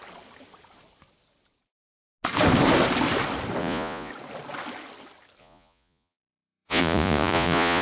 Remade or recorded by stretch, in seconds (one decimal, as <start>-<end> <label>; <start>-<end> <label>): 0.0-3.6 recorded; 3.6-4.1 remade; 4.1-5.4 recorded; 5.4-7.8 remade